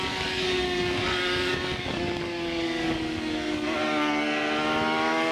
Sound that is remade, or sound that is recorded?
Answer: remade